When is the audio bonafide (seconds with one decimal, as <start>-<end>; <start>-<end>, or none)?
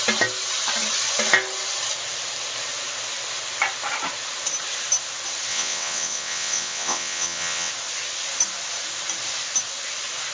0.0-5.5; 7.7-10.3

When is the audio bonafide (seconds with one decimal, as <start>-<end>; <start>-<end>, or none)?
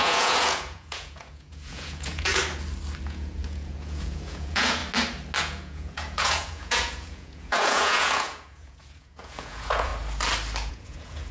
2.4-3.0; 4.8-5.4; 9.9-10.7